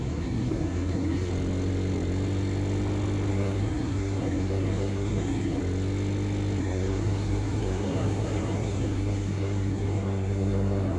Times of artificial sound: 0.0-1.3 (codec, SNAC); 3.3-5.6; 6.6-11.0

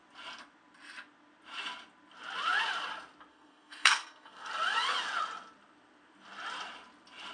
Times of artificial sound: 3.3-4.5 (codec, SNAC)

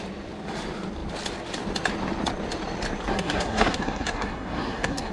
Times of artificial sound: 3.1-5.1 (codec, SNAC)